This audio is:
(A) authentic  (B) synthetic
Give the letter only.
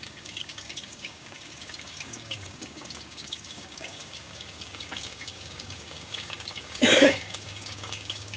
B